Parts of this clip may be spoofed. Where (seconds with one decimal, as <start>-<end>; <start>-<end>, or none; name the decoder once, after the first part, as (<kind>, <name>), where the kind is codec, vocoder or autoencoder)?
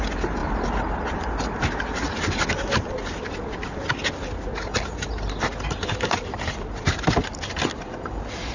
none